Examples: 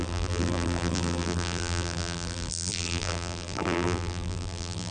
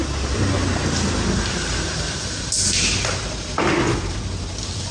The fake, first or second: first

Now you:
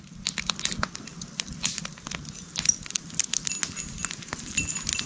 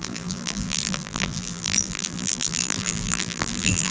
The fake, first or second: second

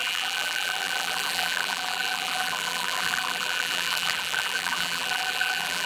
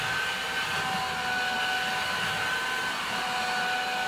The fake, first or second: first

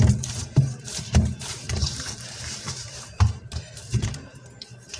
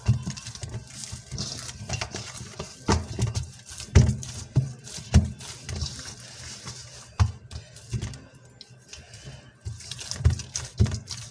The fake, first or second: first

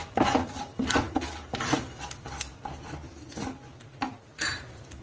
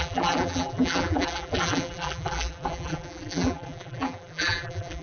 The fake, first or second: second